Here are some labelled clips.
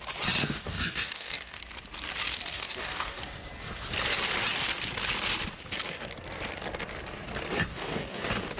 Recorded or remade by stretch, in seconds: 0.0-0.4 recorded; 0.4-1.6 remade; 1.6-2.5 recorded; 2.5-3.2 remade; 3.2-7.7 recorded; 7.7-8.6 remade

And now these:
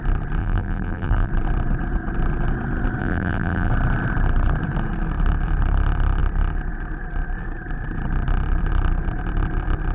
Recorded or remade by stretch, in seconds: 0.0-0.4 recorded; 0.4-1.3 remade; 1.3-3.0 recorded; 3.0-3.7 remade; 3.7-9.9 recorded